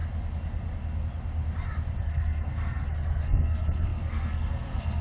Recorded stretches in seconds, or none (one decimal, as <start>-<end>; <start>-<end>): 0.0-2.0